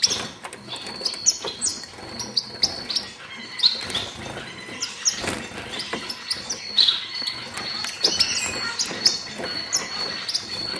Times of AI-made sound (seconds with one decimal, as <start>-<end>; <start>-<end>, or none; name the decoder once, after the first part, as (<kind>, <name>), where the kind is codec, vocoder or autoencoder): none